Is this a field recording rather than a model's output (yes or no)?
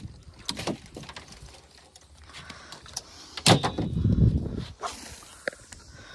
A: yes